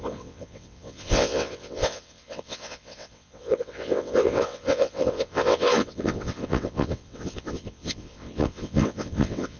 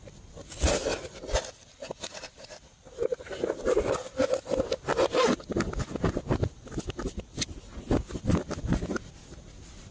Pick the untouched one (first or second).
second